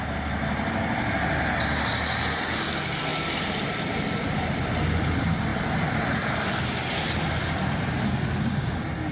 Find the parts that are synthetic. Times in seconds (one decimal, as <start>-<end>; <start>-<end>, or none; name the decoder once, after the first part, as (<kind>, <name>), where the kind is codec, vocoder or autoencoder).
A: none